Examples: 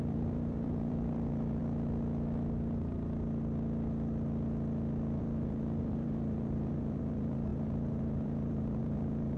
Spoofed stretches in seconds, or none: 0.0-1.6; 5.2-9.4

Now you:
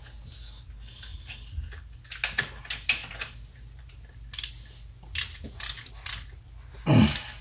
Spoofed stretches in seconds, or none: 3.0-3.9

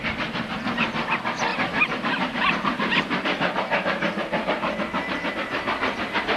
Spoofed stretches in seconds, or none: 1.5-5.3

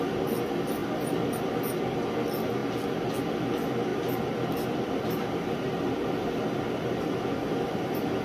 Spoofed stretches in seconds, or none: 0.8-1.4; 3.9-8.2

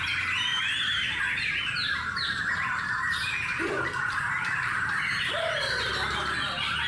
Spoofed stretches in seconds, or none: 0.5-1.2; 1.8-5.9

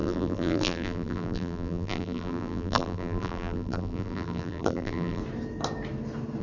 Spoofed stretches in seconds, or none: 0.0-5.2

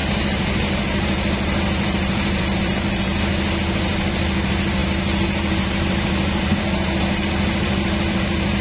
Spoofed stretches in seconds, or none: 0.0-3.1; 3.7-8.6

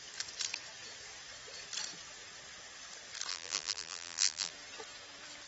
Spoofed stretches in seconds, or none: 3.3-4.5